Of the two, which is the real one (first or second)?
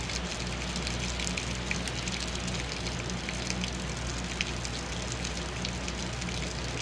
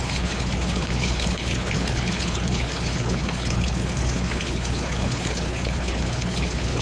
first